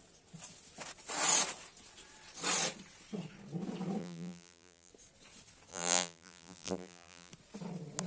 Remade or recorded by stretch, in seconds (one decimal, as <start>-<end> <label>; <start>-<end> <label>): 0.0-4.0 recorded; 4.0-4.9 remade; 4.9-5.7 recorded; 5.7-7.3 remade; 7.3-8.1 recorded

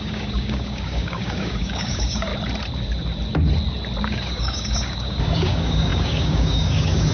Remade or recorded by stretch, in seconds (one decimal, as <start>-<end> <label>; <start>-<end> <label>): 0.0-2.3 remade; 2.3-4.0 recorded; 4.0-7.1 remade

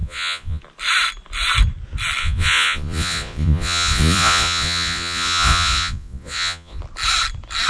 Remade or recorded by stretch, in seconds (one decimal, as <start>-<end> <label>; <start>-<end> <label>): 0.0-0.6 remade; 0.6-2.2 recorded; 2.2-6.8 remade; 6.8-7.7 recorded